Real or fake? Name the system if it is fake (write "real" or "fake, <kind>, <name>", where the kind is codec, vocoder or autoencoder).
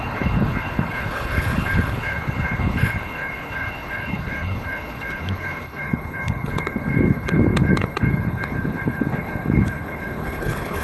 fake, codec, HILCodec